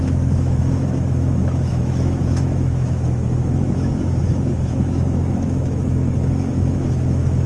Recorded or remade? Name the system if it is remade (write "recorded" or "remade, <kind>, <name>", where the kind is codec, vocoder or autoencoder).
remade, autoencoder, DAC-VAE